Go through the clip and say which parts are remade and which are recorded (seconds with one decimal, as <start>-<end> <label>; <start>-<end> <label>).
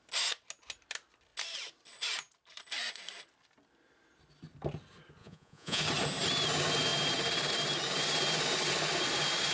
0.0-5.2 recorded; 5.2-5.8 remade; 5.8-9.5 recorded